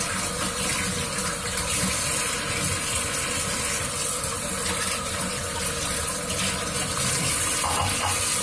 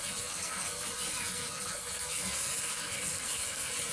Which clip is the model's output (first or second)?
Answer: second